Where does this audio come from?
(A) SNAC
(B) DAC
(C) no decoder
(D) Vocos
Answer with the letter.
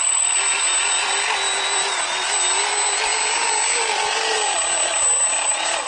C